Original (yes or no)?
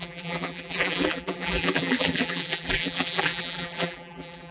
no